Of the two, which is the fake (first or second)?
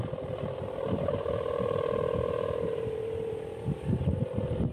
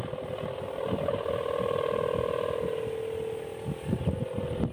first